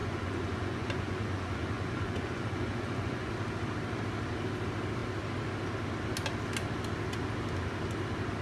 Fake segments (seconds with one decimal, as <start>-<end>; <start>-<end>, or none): 0.0-3.3